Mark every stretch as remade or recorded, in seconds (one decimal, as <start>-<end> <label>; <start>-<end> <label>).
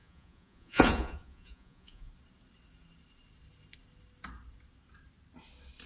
0.0-2.1 remade; 2.1-5.9 recorded